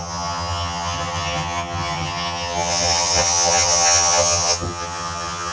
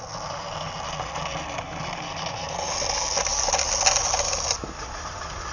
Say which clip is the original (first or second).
second